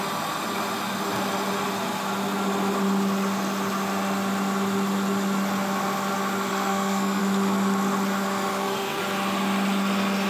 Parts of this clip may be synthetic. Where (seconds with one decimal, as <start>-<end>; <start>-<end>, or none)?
6.5-7.2; 8.5-9.0